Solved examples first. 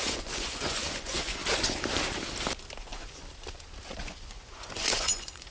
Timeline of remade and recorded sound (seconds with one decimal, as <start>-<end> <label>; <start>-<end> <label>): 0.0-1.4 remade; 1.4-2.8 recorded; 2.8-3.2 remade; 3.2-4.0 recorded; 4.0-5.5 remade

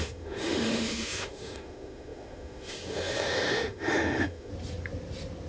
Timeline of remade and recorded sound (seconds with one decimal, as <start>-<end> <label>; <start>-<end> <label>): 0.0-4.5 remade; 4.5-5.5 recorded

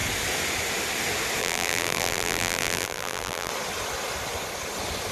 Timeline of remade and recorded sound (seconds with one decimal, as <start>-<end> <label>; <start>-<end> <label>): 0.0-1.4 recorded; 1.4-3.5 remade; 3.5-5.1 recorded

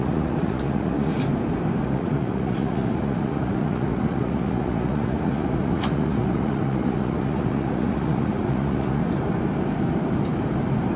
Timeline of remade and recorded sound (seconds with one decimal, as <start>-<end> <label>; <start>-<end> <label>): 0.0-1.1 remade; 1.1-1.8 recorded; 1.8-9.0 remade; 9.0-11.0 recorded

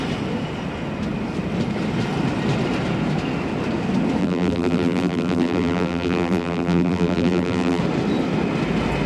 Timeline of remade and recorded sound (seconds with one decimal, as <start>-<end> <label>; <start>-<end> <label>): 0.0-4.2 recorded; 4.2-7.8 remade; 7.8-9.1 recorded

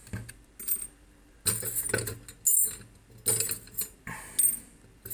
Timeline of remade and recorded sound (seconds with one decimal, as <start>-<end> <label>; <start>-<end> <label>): 0.0-5.1 recorded

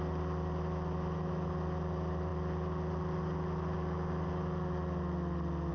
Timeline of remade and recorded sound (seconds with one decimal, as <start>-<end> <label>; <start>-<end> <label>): 0.0-5.7 recorded

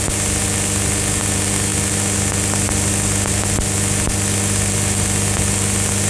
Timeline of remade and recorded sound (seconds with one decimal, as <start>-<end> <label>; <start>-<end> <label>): 0.0-6.1 recorded